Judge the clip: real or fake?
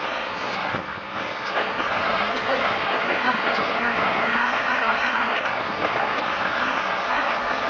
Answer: fake